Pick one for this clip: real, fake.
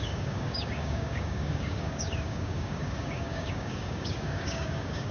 fake